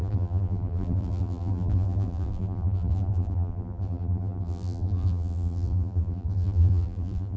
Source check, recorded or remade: remade